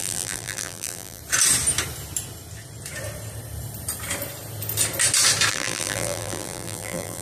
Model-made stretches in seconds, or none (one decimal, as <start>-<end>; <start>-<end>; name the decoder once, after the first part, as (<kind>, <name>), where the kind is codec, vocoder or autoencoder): 0.0-1.2 (vocoder, BigVGAN v2); 5.5-7.2

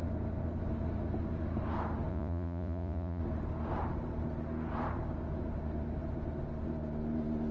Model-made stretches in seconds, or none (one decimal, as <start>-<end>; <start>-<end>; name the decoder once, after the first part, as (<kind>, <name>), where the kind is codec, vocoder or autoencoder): 2.1-3.2 (vocoder, Vocos)

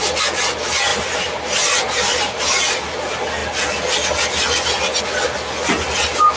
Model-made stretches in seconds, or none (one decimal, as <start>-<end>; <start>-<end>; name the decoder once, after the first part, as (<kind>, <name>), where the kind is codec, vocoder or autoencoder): 0.9-2.4 (vocoder, BigVGAN v2)

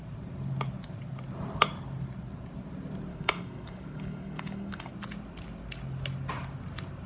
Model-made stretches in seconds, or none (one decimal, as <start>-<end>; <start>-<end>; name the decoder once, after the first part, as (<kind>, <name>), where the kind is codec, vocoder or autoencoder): 3.1-4.9 (codec, DAC)

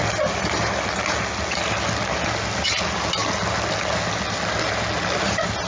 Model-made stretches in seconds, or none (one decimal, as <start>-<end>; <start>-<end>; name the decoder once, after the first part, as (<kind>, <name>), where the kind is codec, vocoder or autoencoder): none

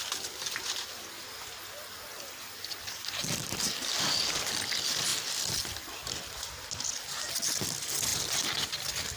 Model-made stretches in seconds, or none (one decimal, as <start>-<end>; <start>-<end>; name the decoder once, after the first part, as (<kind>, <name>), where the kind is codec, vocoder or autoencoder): 2.1-4.5 (vocoder, BigVGAN v2)

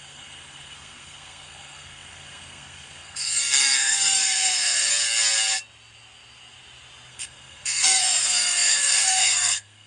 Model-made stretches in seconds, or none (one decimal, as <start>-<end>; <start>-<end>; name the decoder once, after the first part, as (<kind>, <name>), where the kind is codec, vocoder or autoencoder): 0.0-4.9 (codec, SNAC); 7.1-9.9